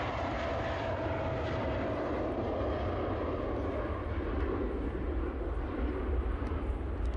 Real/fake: real